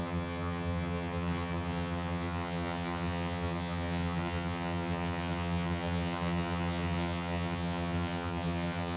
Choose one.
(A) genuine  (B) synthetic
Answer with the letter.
B